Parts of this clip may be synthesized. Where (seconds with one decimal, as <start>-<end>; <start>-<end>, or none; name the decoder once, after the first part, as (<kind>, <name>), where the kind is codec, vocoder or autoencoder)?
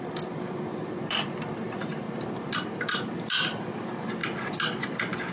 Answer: none